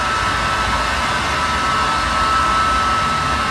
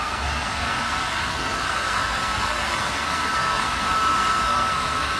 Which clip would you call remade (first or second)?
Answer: second